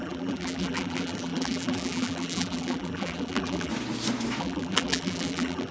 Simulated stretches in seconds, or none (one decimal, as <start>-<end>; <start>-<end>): 0.0-3.7; 4.4-5.7